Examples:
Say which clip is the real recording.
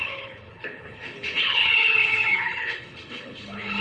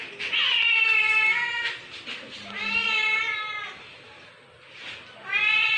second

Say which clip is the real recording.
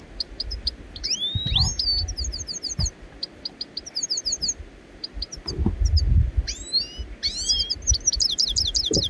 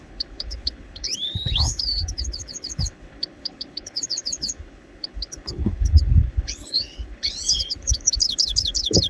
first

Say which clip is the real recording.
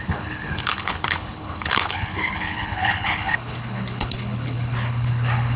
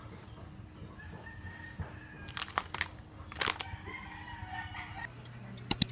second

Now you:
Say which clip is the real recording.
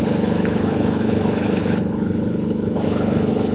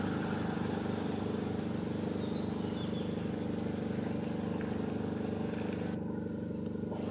second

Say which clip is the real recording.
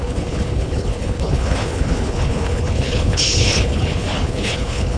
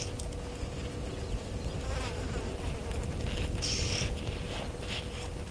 second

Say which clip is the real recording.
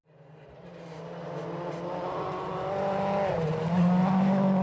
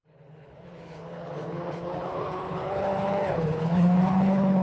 first